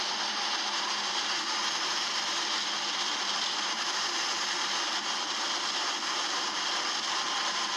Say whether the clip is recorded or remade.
recorded